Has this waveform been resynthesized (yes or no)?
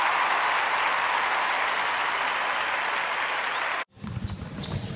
no